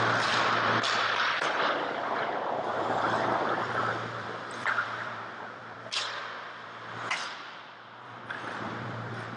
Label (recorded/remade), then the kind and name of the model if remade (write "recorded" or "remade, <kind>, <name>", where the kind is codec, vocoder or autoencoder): remade, vocoder, BigVGAN v2